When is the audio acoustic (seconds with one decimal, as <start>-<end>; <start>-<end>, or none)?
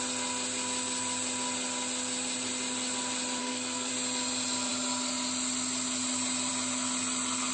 0.0-3.4; 3.9-7.5